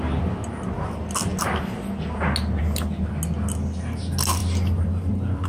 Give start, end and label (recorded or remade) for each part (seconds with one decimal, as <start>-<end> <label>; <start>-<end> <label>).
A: 0.0-5.5 recorded